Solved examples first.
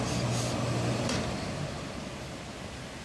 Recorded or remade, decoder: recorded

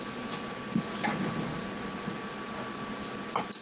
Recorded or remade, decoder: recorded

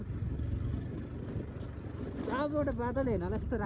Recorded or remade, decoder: recorded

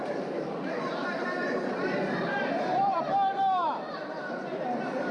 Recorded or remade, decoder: remade, vocoder, BigVGAN v2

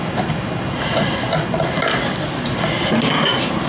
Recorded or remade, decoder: recorded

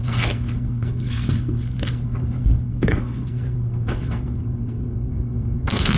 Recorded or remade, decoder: remade, codec, SNAC